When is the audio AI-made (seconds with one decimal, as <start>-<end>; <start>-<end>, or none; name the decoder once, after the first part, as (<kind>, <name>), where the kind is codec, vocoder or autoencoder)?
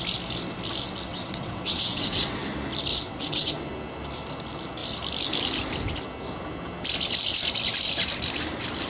1.1-2.4 (vocoder, WaveNeXt); 2.9-3.5